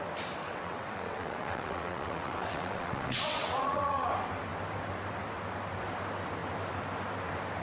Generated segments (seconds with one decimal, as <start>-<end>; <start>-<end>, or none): 0.4-4.1